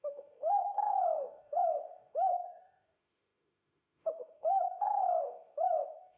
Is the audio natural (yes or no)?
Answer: no